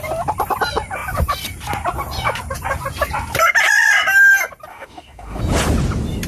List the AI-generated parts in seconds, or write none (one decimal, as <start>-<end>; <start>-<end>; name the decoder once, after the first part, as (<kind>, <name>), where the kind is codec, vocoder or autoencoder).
4.7-5.4 (autoencoder, DAC-VAE)